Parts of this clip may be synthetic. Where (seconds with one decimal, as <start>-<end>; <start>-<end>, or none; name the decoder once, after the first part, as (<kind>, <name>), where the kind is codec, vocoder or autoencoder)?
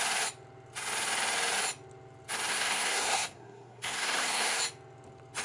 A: 2.5-4.6 (codec, SNAC)